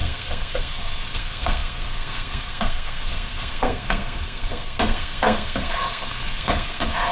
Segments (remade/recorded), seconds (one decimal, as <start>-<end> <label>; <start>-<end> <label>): 0.0-7.1 remade